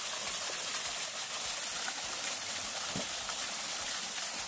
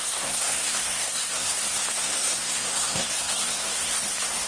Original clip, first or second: first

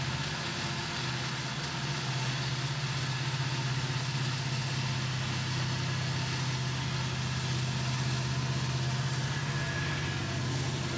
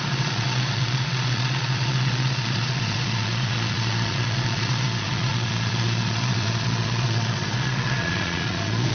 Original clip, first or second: first